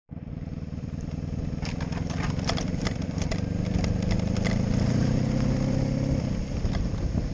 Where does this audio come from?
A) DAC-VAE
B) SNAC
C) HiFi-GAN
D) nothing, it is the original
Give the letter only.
D